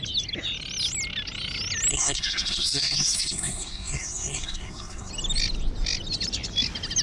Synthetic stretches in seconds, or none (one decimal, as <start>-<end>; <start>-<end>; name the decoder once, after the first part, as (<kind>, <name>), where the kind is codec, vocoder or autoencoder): 1.9-5.1 (codec, SNAC)